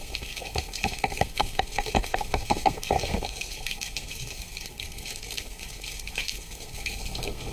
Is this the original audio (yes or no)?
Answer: no